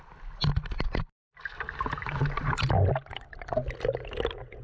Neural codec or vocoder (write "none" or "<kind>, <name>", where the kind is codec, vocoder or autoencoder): none